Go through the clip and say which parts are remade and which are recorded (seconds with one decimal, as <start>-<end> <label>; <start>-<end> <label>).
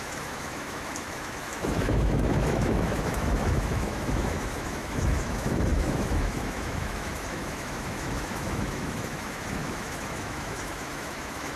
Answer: 0.0-11.6 remade